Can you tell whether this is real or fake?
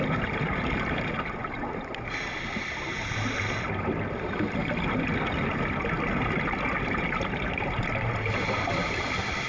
real